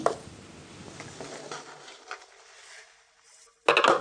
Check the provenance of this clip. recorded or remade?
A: recorded